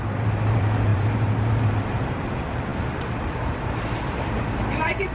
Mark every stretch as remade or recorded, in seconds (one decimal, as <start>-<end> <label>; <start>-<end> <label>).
0.0-5.1 remade